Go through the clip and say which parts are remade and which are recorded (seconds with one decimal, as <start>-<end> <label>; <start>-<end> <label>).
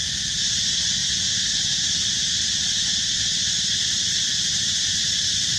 0.0-1.0 remade; 1.0-1.7 recorded; 1.7-2.1 remade; 2.1-3.9 recorded; 3.9-5.6 remade